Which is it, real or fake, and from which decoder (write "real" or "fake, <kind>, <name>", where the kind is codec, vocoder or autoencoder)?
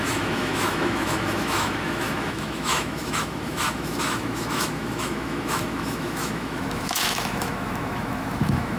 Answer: fake, autoencoder, DAC-VAE